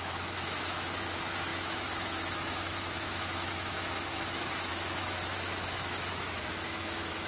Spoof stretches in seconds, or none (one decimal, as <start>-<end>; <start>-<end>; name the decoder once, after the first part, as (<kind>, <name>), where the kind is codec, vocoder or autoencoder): 0.0-7.3 (autoencoder, DAC-VAE)